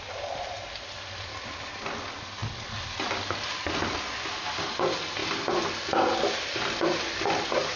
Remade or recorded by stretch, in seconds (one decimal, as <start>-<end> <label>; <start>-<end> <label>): 0.0-2.4 recorded; 2.4-3.6 remade; 3.6-7.8 recorded